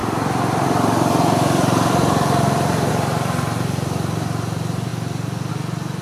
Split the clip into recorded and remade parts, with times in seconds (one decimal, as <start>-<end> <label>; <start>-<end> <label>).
0.0-2.9 remade; 2.9-6.0 recorded